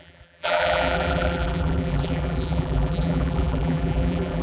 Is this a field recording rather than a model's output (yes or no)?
no